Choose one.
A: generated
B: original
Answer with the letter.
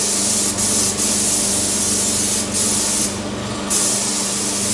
B